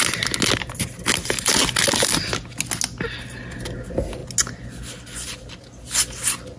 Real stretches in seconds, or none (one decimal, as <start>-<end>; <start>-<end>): 0.0-6.6